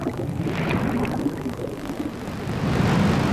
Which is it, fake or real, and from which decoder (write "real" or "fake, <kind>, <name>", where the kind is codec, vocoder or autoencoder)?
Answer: real